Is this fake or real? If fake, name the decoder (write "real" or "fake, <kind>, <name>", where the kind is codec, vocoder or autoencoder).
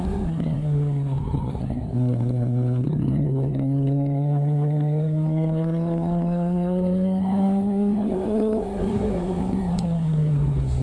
fake, codec, SNAC